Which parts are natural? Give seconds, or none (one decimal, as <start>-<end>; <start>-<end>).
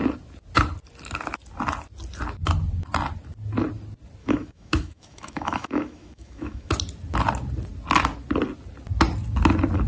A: 0.0-4.2; 6.7-9.9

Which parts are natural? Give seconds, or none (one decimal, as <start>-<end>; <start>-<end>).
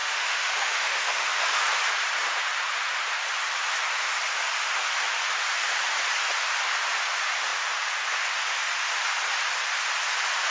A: 1.7-10.5